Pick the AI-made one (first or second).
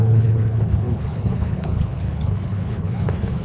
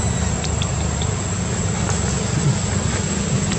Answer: first